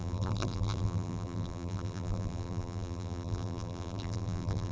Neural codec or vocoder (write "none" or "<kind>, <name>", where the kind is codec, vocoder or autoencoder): vocoder, BigVGAN v2